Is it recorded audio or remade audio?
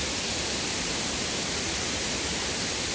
recorded